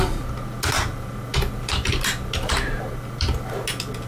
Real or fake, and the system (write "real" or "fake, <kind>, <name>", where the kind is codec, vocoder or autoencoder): real